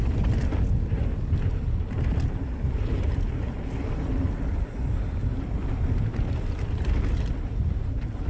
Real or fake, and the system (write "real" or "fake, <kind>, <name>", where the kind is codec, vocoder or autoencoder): real